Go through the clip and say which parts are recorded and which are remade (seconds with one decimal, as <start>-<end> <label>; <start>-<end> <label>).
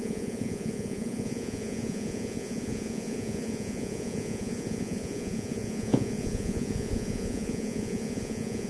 0.0-8.7 remade